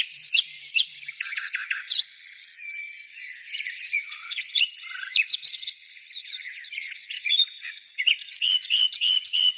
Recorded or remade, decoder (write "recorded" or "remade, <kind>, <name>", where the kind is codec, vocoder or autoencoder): remade, vocoder, Vocos